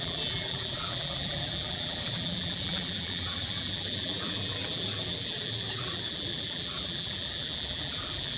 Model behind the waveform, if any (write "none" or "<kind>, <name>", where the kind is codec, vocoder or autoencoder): vocoder, BigVGAN v2